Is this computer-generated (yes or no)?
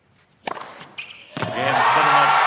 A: no